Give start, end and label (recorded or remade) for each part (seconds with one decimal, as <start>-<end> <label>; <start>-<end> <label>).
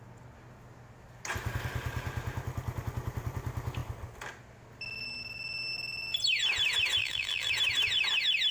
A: 0.0-7.0 recorded; 7.0-7.5 remade; 7.5-8.5 recorded